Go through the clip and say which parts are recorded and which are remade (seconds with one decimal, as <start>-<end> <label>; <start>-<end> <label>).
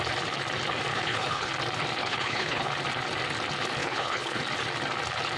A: 0.0-0.9 recorded; 0.9-1.5 remade; 1.5-2.0 recorded; 2.0-2.7 remade; 2.7-3.8 recorded; 3.8-4.4 remade; 4.4-5.4 recorded